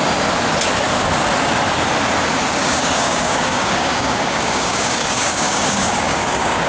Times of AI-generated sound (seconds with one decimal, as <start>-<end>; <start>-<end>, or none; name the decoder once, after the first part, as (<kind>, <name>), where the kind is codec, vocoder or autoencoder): 2.6-6.7 (codec, DAC)